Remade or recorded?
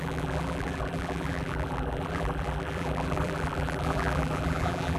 remade